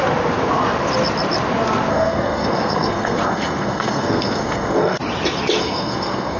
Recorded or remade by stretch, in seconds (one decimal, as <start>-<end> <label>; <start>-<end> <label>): 0.0-1.9 recorded; 1.9-5.0 remade; 5.0-5.6 recorded; 5.6-6.4 remade